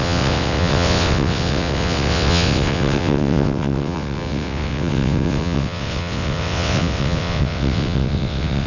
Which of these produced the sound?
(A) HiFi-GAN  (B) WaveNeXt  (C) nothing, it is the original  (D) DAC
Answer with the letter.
B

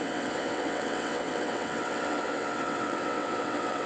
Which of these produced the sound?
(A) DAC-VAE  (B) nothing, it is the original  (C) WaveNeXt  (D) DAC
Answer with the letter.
C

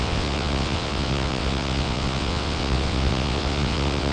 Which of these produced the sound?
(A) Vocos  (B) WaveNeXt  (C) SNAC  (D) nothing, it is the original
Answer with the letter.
B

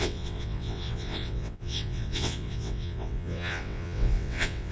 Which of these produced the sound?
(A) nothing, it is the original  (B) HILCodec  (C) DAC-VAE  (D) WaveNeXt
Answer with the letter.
D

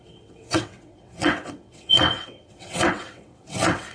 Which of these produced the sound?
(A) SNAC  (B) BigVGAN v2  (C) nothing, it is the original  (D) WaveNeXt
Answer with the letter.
D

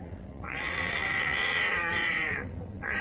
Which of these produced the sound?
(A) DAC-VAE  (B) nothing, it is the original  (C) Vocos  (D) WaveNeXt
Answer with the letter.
D